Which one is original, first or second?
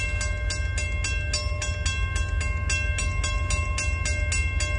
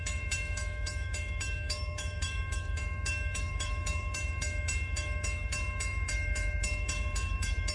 first